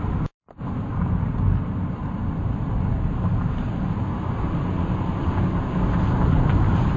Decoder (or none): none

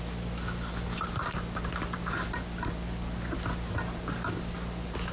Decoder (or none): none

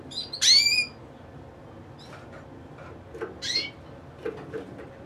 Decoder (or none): none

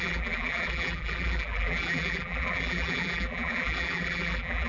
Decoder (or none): vocoder, BigVGAN v2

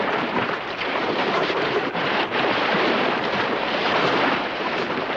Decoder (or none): vocoder, BigVGAN v2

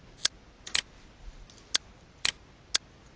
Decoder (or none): none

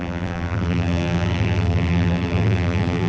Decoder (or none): vocoder, BigVGAN v2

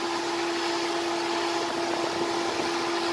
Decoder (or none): none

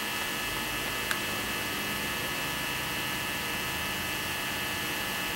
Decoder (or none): none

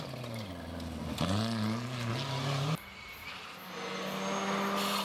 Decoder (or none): none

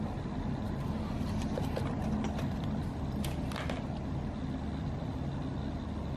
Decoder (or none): none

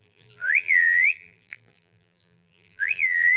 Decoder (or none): vocoder, BigVGAN v2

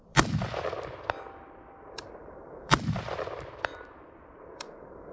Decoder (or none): vocoder, BigVGAN v2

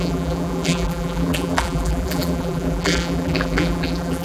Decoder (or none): vocoder, BigVGAN v2